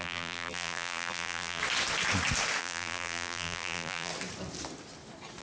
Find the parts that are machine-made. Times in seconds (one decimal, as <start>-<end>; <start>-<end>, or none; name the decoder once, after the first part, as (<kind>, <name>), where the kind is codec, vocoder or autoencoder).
0.0-1.6 (vocoder, BigVGAN v2); 2.6-4.1